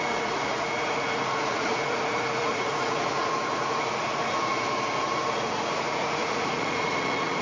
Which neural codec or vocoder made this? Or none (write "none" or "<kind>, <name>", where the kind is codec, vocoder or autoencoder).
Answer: vocoder, Vocos